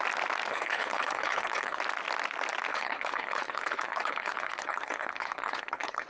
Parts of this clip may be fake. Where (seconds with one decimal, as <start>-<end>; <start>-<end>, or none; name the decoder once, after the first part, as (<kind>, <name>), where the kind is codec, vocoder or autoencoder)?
0.5-1.8 (codec, HILCodec); 2.7-6.1